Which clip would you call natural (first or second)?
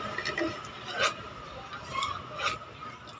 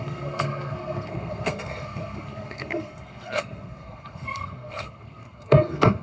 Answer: first